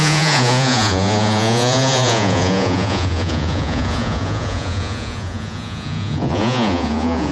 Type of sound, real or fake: fake